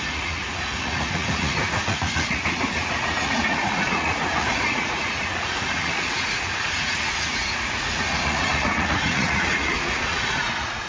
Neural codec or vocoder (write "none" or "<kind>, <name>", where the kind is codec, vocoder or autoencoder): vocoder, Vocos